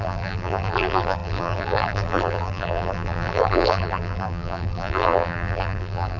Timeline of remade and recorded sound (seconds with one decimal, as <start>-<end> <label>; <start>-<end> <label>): 0.0-6.2 remade

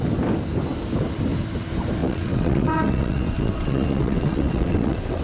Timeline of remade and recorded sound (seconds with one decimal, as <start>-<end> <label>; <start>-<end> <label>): 0.0-2.0 recorded; 2.0-5.2 remade

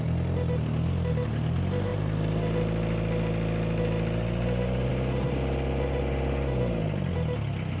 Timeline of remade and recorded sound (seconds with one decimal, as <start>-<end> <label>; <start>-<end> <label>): 0.0-7.8 recorded

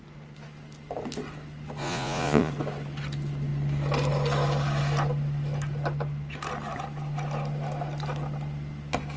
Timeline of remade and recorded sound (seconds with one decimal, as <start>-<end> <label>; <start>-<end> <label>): 0.0-1.8 recorded; 1.8-2.5 remade; 2.5-9.2 recorded